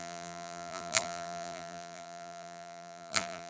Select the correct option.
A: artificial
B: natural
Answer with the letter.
A